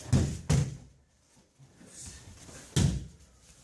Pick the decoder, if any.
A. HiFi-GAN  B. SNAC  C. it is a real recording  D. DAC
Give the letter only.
C